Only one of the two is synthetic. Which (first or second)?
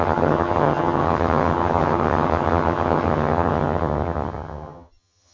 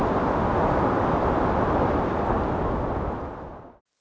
first